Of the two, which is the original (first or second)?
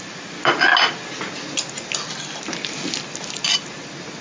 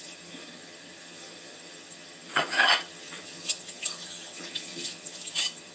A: first